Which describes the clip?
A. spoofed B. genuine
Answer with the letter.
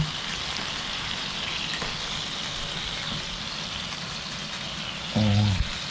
B